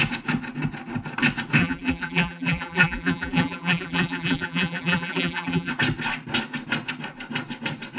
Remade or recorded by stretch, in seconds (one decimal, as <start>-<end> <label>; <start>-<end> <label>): 0.0-1.6 recorded; 1.6-5.7 remade; 5.7-8.0 recorded